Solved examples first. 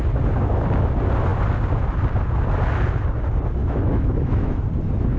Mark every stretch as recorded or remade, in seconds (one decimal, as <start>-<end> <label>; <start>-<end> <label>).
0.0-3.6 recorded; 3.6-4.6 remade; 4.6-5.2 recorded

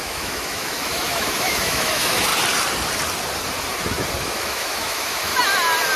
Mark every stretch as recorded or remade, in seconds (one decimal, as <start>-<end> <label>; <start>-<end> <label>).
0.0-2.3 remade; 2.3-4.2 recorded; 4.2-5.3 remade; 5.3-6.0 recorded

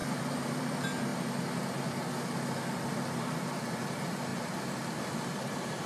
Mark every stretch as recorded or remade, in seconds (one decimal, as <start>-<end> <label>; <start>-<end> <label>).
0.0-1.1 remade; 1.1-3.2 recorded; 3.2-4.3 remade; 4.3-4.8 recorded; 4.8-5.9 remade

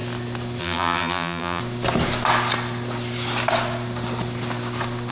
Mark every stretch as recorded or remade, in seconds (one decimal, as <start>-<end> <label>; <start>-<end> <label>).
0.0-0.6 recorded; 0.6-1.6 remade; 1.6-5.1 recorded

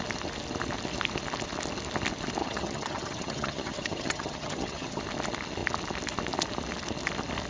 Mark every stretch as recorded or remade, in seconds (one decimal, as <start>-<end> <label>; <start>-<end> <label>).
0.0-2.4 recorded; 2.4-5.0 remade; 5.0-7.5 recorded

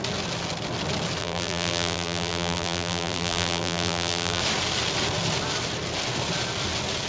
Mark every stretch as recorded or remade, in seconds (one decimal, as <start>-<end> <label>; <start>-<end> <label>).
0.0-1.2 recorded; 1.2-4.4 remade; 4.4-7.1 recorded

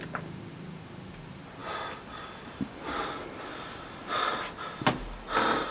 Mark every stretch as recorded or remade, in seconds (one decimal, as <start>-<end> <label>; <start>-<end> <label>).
0.0-5.7 recorded

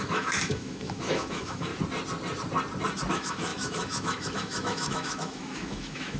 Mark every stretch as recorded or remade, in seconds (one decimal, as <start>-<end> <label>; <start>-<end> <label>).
0.0-1.7 remade; 1.7-3.1 recorded; 3.1-6.2 remade